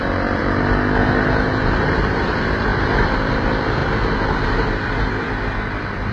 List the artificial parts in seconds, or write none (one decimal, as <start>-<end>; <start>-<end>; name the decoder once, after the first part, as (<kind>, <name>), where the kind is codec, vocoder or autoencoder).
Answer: 0.0-0.4 (vocoder, BigVGAN v2); 1.8-2.7; 3.3-3.8; 5.0-6.1